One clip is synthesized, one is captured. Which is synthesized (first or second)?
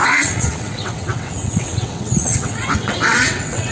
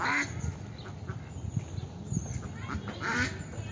first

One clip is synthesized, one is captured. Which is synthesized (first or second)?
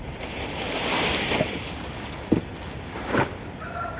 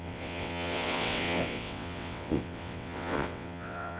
second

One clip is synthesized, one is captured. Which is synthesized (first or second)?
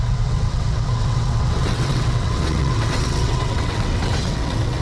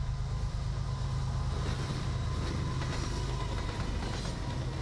first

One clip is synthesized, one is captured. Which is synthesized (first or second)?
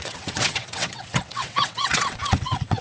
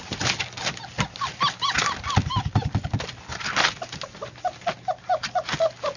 first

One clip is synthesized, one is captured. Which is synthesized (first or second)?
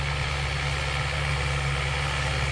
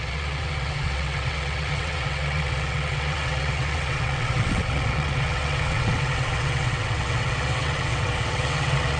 second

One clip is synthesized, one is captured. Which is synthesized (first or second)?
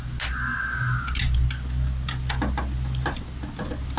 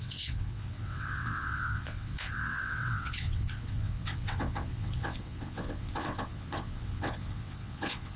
second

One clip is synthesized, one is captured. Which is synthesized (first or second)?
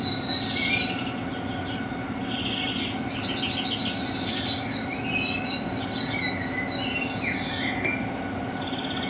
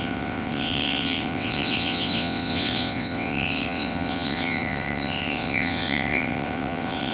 second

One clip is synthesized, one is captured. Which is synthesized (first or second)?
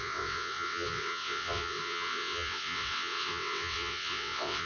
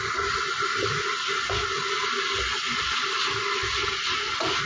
first